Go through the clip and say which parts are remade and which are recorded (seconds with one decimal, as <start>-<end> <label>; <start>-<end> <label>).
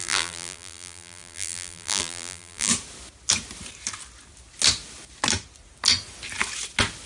0.0-2.7 remade; 2.7-7.1 recorded